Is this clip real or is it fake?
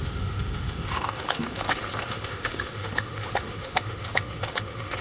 fake